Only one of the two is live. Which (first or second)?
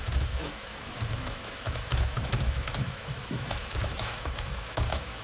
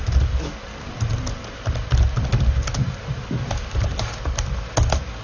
second